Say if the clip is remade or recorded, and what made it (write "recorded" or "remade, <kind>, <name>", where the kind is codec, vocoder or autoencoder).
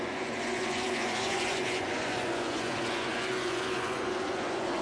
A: remade, vocoder, Vocos